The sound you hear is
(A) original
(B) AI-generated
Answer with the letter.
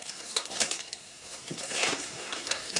B